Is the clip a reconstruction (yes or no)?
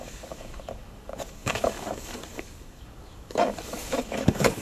yes